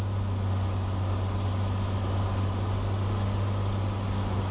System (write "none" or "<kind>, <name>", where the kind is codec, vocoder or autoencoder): none